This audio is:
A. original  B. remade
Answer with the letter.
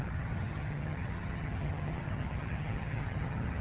B